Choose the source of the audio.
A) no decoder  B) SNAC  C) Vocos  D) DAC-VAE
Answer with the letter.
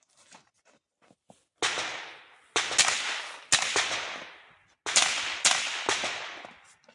A